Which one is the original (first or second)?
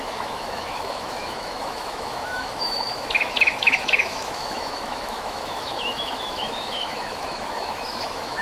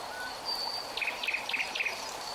second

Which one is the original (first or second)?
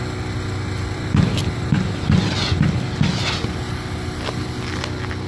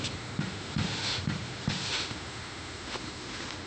first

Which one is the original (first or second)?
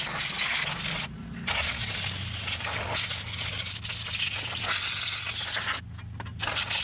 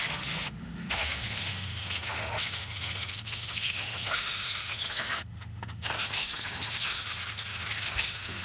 first